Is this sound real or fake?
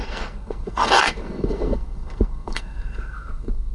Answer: fake